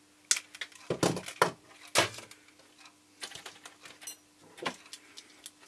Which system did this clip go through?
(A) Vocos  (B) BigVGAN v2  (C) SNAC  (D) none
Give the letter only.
D